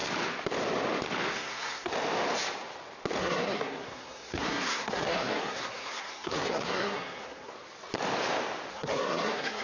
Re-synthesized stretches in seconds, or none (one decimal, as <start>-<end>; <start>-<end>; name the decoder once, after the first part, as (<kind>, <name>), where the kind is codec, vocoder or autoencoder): 1.3-1.9 (codec, SNAC); 3.2-7.5; 8.7-9.6